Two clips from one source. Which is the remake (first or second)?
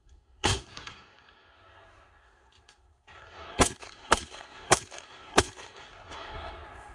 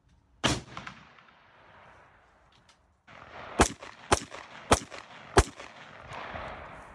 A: first